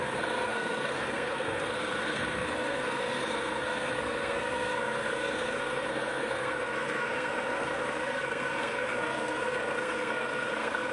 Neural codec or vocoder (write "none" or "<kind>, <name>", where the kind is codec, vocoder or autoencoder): codec, SNAC